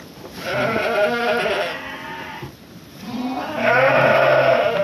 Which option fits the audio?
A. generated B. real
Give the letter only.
B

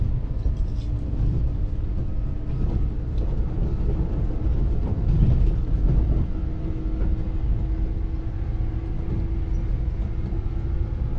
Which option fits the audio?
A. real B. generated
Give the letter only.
A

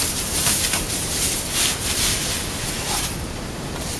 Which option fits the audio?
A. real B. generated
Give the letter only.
B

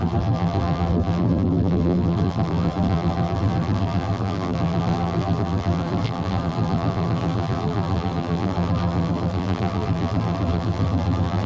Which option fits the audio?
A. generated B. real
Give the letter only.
A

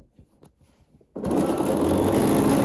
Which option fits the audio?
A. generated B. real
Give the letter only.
B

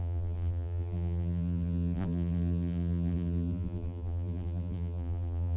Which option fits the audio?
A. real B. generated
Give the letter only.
B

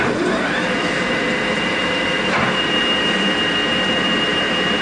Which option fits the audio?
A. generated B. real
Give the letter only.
A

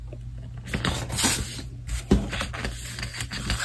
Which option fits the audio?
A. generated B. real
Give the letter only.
B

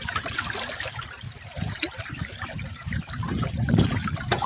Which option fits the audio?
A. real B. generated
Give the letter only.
B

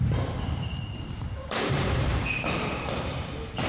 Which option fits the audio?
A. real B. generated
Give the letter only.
B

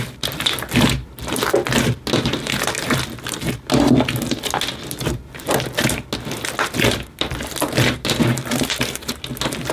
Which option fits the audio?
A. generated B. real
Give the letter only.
B